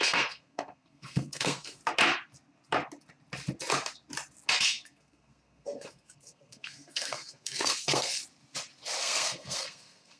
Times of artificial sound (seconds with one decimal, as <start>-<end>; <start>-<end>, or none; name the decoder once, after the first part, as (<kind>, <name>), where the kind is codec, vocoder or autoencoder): 0.0-1.8 (codec, SNAC); 4.6-8.2; 9.0-10.2